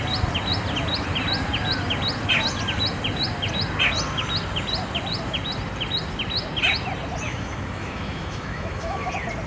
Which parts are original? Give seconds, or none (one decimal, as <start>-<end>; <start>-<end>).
0.0-7.3; 9.1-9.5